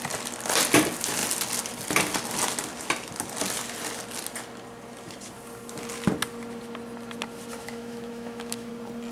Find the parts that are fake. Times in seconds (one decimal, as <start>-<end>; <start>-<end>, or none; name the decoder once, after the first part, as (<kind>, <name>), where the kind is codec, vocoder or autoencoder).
7.6-8.7 (autoencoder, DAC-VAE)